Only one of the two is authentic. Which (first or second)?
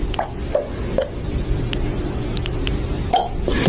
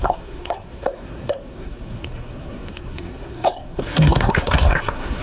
first